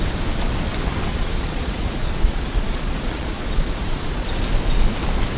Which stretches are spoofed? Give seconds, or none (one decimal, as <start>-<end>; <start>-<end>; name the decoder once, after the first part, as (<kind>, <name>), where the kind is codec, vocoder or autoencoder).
1.1-4.3 (vocoder, Vocos)